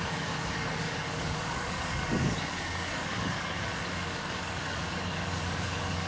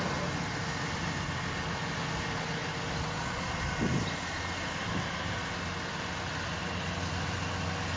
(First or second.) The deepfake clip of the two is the first